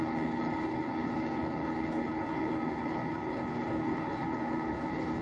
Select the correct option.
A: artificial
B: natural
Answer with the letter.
A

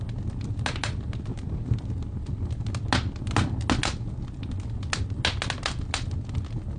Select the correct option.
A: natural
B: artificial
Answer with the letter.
A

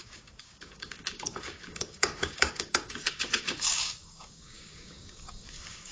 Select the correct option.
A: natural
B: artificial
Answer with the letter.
B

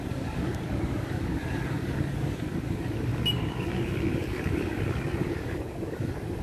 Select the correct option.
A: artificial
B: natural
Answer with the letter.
A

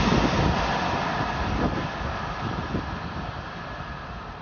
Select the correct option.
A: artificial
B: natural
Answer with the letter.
B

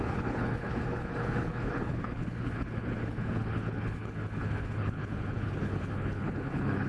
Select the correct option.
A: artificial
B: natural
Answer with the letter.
A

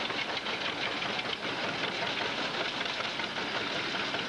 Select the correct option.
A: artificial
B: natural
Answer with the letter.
B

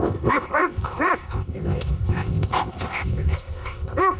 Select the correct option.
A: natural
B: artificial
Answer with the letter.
B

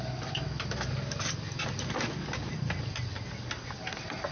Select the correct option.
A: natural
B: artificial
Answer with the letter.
A